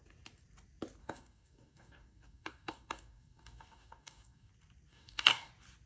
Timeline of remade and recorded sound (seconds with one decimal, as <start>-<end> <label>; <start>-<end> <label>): 0.0-1.0 recorded; 1.0-4.5 remade; 4.5-4.9 recorded; 4.9-5.5 remade; 5.5-5.9 recorded